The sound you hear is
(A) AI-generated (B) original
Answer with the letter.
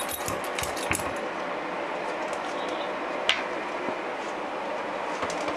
B